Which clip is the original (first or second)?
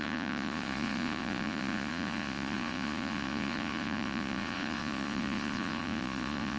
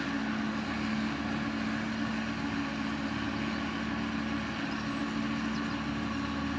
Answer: second